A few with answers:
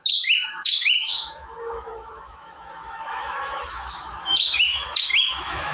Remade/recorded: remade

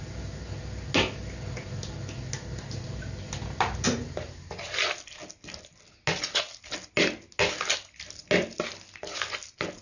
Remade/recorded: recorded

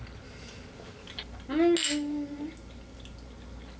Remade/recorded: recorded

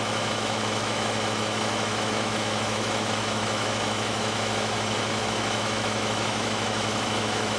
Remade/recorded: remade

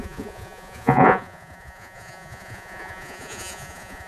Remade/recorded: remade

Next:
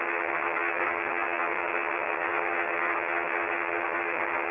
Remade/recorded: remade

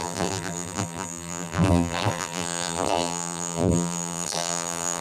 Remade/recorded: remade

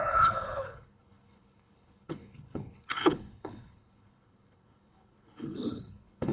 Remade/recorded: remade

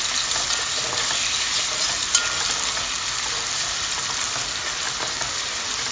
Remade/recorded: recorded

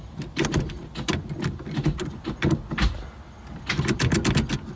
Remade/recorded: recorded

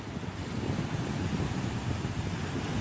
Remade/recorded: recorded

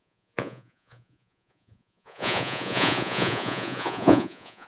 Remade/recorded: remade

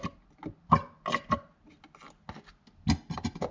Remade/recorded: recorded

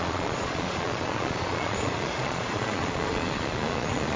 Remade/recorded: remade